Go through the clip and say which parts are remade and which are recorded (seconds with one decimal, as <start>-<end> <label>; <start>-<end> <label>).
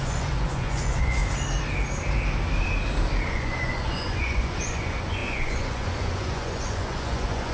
0.0-1.2 remade; 1.2-3.3 recorded; 3.3-7.5 remade